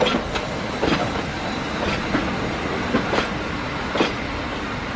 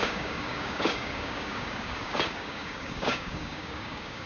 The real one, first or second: first